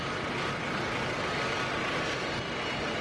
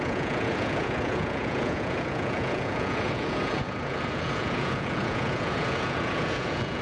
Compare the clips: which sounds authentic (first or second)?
first